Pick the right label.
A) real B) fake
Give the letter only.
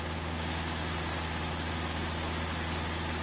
A